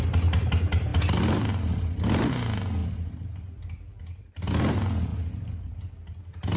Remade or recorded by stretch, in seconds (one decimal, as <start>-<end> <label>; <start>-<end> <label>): 0.0-6.6 recorded